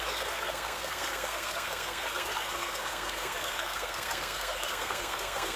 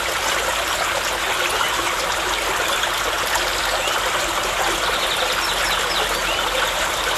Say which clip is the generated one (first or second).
first